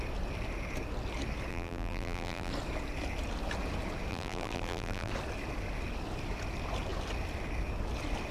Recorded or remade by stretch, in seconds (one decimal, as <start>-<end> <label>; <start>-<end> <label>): 0.0-1.5 recorded; 1.5-2.5 remade; 2.5-4.1 recorded; 4.1-5.1 remade; 5.1-8.3 recorded